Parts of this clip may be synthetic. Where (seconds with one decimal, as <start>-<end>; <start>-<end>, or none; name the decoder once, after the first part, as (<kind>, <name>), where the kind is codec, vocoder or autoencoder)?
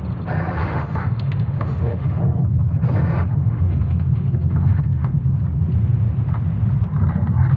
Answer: 0.6-2.2 (autoencoder, DAC-VAE); 3.4-5.2